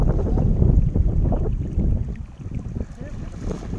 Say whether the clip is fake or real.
real